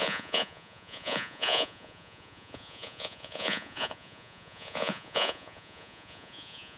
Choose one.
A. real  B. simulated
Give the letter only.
B